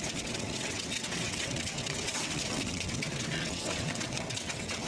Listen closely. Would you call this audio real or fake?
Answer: fake